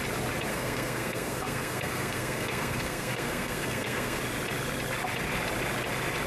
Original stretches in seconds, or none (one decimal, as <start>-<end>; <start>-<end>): 0.0-0.5; 4.2-6.3